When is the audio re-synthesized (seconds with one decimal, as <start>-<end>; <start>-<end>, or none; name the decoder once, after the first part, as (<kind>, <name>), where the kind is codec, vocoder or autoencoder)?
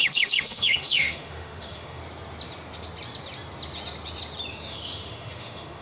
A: 0.0-2.0 (autoencoder, DAC-VAE); 4.5-5.8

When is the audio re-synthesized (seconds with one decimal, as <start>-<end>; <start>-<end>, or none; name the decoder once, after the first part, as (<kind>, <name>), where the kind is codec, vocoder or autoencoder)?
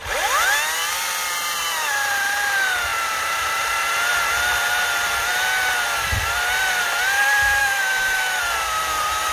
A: 7.6-8.4 (autoencoder, DAC-VAE)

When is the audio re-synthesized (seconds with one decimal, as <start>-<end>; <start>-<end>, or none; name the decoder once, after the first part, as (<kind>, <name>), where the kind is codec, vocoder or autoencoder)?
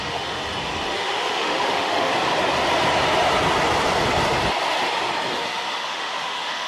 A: 0.0-0.4 (autoencoder, DAC-VAE); 0.9-2.1; 5.3-6.7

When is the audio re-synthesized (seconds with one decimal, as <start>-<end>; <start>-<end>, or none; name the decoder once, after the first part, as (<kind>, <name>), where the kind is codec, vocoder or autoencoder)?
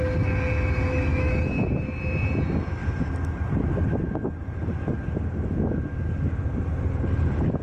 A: 1.1-1.7 (autoencoder, DAC-VAE)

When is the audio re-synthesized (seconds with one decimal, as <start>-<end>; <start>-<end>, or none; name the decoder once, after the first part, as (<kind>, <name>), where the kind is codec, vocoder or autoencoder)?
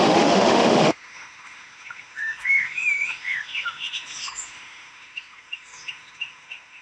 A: 0.0-6.8 (autoencoder, DAC-VAE)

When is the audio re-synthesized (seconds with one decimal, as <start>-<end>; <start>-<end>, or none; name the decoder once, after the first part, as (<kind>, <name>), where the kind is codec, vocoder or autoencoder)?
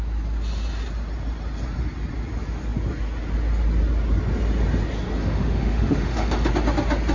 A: 5.2-6.5 (autoencoder, DAC-VAE)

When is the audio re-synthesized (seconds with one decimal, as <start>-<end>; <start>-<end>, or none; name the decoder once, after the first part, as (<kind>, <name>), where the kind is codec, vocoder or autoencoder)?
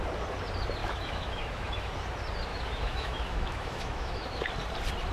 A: 0.8-1.9 (autoencoder, DAC-VAE); 2.5-4.4